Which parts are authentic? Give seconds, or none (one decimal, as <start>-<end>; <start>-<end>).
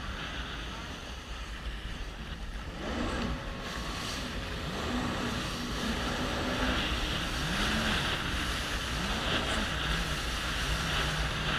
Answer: 0.0-11.6